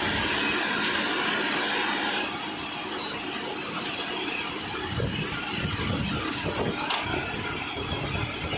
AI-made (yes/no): no